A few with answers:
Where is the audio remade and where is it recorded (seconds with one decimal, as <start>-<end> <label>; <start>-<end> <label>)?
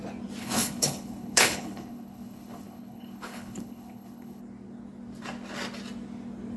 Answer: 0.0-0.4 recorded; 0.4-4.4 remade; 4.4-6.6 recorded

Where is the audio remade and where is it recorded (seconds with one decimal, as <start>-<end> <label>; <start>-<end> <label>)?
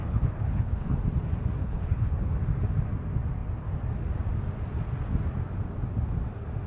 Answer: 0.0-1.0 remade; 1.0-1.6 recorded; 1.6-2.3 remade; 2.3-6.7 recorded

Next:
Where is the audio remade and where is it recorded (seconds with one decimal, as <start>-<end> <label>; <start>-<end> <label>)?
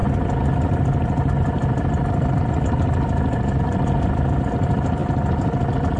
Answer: 0.0-6.0 recorded